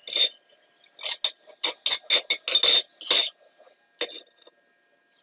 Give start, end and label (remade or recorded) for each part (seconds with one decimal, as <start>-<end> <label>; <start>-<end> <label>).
0.0-5.2 recorded